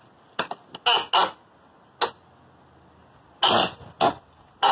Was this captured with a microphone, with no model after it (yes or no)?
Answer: yes